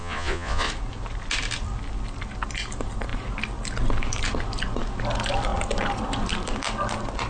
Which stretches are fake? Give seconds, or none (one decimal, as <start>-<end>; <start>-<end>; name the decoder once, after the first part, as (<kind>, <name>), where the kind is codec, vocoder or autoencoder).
0.0-0.7 (vocoder, Vocos)